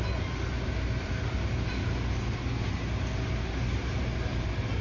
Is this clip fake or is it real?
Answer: real